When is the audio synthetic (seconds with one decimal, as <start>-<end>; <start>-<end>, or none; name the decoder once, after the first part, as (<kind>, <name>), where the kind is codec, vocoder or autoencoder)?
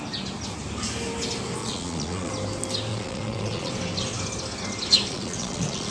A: 1.6-2.3 (vocoder, Vocos); 2.9-3.7; 5.1-5.9